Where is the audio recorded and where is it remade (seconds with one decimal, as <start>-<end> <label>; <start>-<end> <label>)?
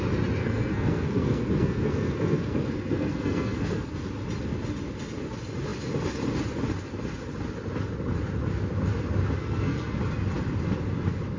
0.0-0.4 recorded; 0.4-3.9 remade; 3.9-9.4 recorded; 9.4-10.0 remade; 10.0-11.4 recorded